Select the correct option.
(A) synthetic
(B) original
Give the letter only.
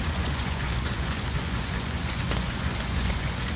A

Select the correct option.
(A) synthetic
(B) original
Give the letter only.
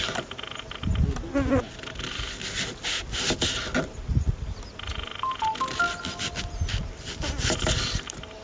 B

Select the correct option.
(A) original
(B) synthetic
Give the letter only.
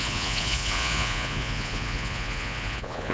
B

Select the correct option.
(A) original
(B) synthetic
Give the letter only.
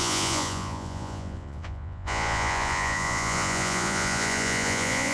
B